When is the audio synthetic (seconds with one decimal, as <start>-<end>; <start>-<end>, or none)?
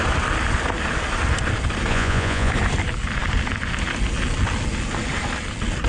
1.9-2.5